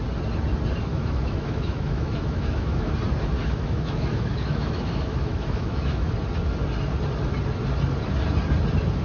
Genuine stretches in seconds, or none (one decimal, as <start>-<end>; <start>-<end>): 0.0-0.9; 2.9-3.4; 6.1-9.0